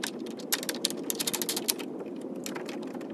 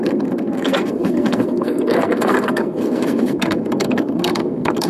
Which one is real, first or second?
first